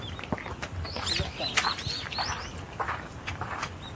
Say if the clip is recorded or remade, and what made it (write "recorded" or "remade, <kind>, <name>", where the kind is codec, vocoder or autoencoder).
recorded